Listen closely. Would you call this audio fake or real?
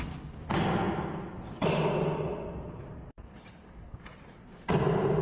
real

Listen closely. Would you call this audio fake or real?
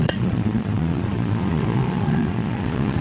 fake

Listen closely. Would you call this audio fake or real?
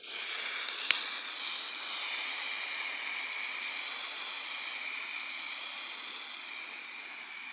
real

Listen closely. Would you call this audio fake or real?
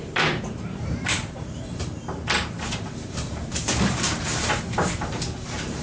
fake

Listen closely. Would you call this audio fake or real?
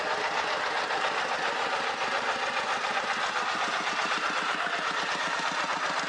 real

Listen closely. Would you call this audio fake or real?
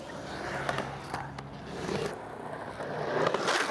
real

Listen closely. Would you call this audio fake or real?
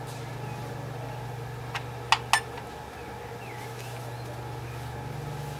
real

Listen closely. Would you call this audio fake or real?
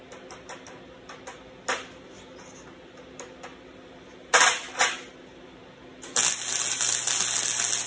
real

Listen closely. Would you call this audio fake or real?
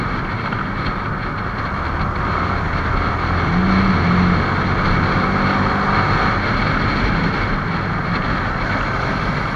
real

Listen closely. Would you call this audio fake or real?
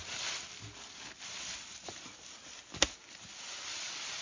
fake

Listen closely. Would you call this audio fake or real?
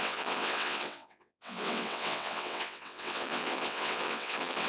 fake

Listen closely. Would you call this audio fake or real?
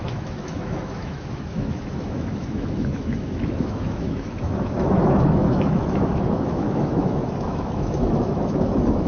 fake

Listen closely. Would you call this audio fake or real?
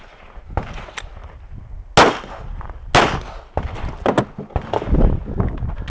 real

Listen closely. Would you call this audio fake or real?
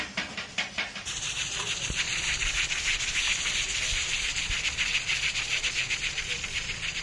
fake